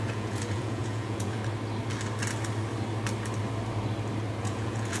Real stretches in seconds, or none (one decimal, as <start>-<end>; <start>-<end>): 1.4-4.4